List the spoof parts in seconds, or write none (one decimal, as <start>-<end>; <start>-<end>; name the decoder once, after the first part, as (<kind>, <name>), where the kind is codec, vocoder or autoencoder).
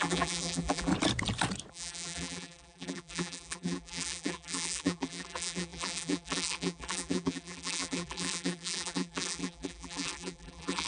0.0-0.9 (vocoder, BigVGAN v2); 1.7-10.9